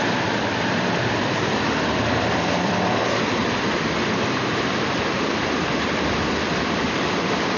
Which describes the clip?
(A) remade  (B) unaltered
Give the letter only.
A